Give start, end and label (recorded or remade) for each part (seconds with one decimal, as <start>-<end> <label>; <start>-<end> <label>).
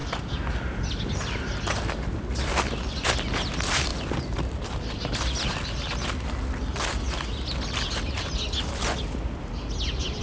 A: 0.0-10.2 recorded